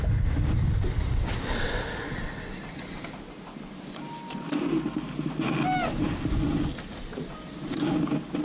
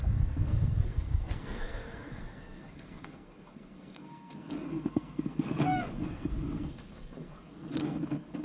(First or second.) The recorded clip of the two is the first